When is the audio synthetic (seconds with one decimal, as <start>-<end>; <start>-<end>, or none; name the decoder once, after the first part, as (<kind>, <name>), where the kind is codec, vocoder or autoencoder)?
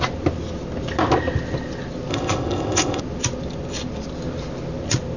2.1-3.0 (codec, ZipCodec)